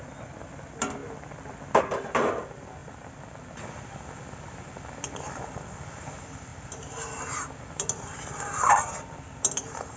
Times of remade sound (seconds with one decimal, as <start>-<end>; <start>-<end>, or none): none